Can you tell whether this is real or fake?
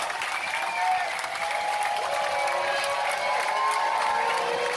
real